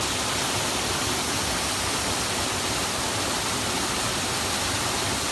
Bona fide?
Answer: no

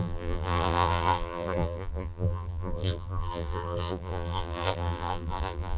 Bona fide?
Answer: no